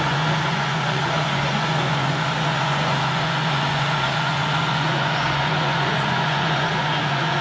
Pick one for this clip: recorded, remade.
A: remade